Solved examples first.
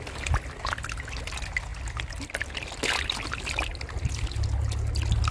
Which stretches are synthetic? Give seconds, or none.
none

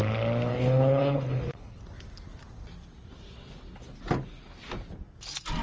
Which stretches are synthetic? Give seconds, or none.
0.5-1.8 (codec, HILCodec)

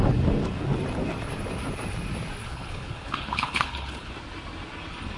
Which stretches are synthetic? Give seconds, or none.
2.4-4.1 (codec, HILCodec)

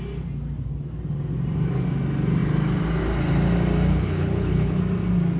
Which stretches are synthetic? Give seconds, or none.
3.9-4.8 (codec, HILCodec)